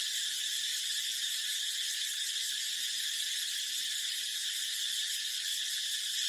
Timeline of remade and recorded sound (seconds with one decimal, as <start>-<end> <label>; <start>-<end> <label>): 0.0-4.3 remade; 4.3-5.0 recorded; 5.0-5.5 remade; 5.5-6.3 recorded